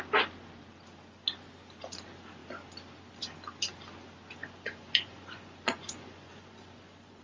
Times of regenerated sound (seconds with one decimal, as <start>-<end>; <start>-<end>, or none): 4.4-7.2